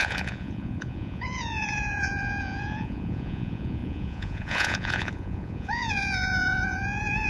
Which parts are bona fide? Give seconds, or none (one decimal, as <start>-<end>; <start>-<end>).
none